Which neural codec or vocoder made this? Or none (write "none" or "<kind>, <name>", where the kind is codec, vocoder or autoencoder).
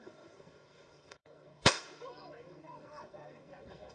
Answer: codec, SNAC